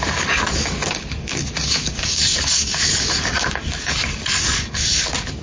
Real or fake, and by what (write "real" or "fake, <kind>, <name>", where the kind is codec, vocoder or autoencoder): fake, codec, DAC